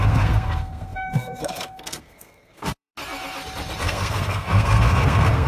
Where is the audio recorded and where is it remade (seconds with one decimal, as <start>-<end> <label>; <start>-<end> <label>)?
0.0-2.9 remade; 2.9-3.8 recorded; 3.8-5.5 remade